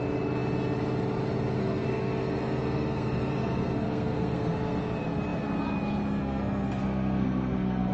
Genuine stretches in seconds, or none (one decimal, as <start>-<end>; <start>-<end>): 0.0-1.6; 4.8-6.2